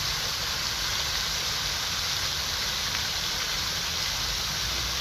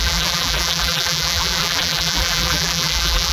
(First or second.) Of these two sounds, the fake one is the second